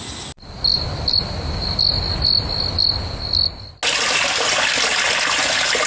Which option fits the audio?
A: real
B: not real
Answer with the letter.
A